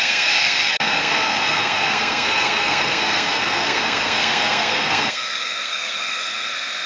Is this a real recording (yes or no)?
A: no